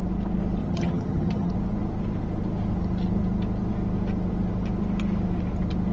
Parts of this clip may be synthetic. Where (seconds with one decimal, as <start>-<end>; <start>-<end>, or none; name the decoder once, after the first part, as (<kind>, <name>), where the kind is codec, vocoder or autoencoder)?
0.6-1.5 (vocoder, HiFi-GAN)